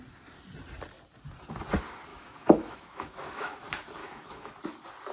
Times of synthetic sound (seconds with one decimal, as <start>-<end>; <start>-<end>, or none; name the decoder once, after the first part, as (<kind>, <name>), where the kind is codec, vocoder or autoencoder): 2.1-3.6 (autoencoder, DAC-VAE); 4.0-4.5